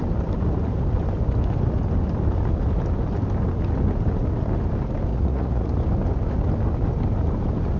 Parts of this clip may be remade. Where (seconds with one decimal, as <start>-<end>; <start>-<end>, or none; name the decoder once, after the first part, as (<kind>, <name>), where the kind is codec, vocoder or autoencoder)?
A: 5.1-5.7 (vocoder, Vocos)